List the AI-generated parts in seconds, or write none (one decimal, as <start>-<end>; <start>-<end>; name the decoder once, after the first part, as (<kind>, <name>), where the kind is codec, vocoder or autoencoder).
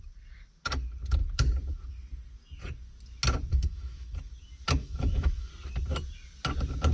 3.5-4.3 (autoencoder, DAC-VAE); 4.8-5.5